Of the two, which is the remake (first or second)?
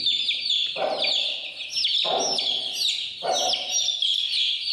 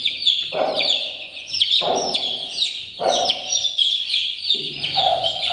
second